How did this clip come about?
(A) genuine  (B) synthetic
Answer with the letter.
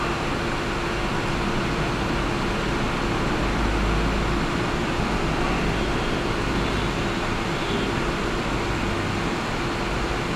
A